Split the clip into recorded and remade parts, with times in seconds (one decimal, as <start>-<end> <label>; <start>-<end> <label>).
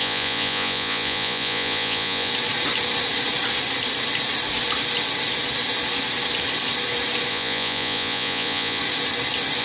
0.0-2.3 remade; 2.3-7.3 recorded; 7.3-8.8 remade; 8.8-9.6 recorded